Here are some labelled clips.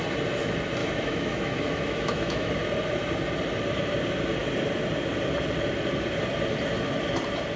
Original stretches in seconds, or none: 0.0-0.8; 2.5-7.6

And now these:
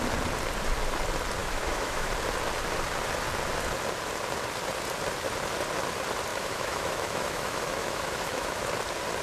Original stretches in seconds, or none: 0.0-1.4; 2.1-6.3; 8.7-9.2

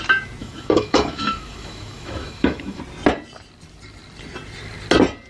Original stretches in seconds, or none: 0.0-0.4; 2.8-5.3

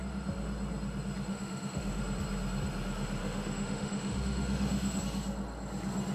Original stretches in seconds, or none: 0.0-1.3; 2.0-3.2; 5.0-6.1

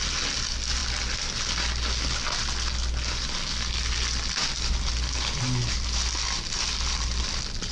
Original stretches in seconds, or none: 0.0-7.7

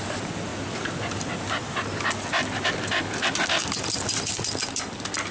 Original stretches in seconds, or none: 0.0-5.3